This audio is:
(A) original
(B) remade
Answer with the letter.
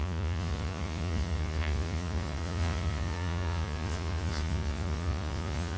B